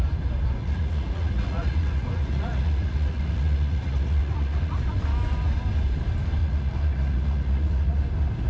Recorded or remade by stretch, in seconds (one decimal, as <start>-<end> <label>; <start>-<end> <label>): 0.0-0.6 recorded; 0.6-4.8 remade; 4.8-6.4 recorded; 6.4-8.0 remade; 8.0-8.5 recorded